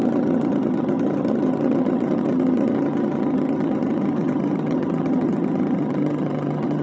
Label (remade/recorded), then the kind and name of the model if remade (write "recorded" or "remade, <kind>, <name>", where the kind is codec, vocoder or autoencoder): remade, vocoder, HiFi-GAN